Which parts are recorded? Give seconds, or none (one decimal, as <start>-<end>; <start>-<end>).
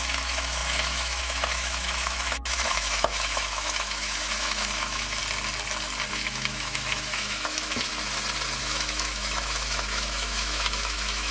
5.2-6.1; 7.9-8.6